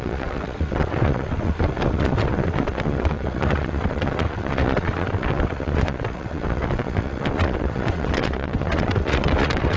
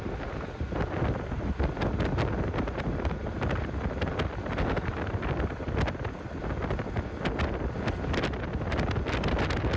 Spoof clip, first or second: first